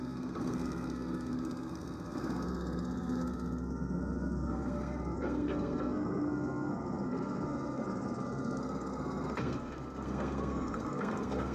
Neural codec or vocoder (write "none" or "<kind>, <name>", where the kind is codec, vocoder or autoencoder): codec, SNAC